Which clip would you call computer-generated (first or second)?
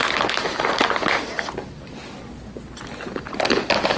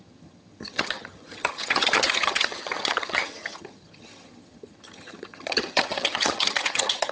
second